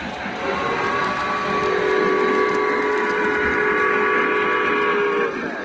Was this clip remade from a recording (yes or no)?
no